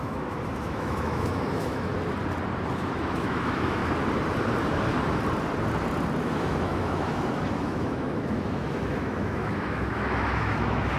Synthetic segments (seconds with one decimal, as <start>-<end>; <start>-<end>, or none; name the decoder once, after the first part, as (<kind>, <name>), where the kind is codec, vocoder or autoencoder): 0.0-1.9 (autoencoder, DAC-VAE); 2.7-3.8; 6.2-11.0